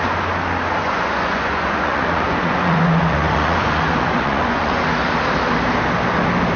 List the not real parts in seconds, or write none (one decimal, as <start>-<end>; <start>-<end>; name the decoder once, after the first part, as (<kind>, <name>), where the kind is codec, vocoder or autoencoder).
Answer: 0.8-4.8 (vocoder, Vocos)